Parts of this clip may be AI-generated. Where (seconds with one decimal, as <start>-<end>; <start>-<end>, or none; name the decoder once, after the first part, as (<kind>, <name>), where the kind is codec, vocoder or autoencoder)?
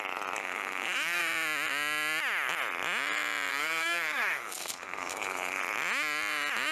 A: 0.4-1.2 (codec, SNAC); 3.5-5.6